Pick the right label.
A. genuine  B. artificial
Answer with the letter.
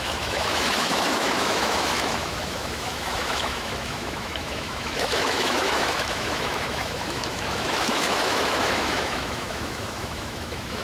B